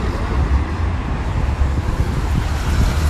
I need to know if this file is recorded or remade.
recorded